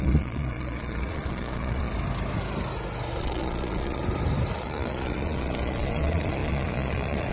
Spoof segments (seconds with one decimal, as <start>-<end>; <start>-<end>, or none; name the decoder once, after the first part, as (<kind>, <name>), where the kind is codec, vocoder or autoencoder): 0.0-1.9 (vocoder, Vocos); 3.2-4.0; 4.6-7.3

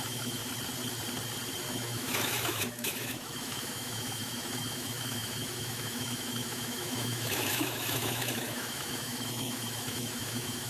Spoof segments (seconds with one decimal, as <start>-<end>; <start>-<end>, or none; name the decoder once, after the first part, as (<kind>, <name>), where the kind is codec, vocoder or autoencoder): 0.0-0.4 (autoencoder, DAC-VAE); 1.7-10.7